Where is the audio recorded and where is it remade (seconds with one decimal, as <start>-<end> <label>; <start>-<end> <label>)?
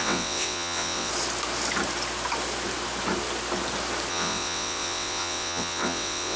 0.0-1.1 remade; 1.1-4.1 recorded; 4.1-6.4 remade